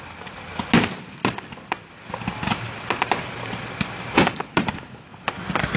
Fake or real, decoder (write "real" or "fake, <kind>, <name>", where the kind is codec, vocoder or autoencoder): real